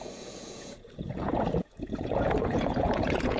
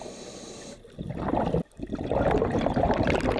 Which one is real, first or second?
second